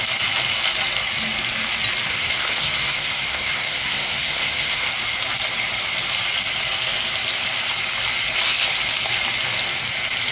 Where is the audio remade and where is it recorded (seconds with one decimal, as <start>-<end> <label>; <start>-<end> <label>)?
0.0-2.1 recorded; 2.1-4.9 remade; 4.9-10.3 recorded